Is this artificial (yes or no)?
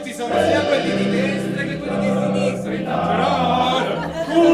yes